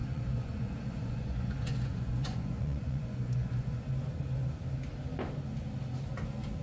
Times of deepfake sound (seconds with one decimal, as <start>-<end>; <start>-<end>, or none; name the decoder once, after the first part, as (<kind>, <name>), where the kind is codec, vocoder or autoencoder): 0.0-3.8 (vocoder, Vocos)